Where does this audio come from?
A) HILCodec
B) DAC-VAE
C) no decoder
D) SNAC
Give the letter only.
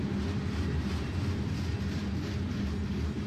C